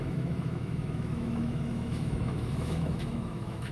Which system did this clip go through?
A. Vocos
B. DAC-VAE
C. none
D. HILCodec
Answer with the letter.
B